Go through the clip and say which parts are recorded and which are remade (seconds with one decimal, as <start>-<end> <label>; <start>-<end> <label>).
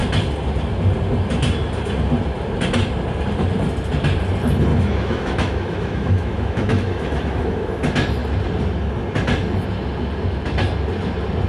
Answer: 0.0-4.7 recorded; 4.7-7.7 remade; 7.7-11.5 recorded